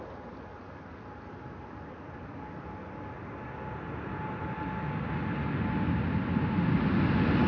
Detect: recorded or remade recorded